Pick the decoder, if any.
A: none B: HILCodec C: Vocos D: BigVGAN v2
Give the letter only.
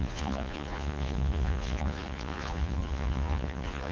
C